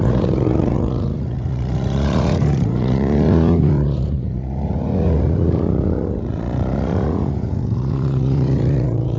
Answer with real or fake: fake